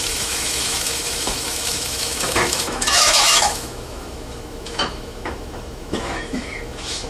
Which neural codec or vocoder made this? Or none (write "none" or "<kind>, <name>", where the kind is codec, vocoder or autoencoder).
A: autoencoder, DAC-VAE